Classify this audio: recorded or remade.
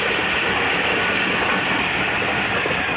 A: recorded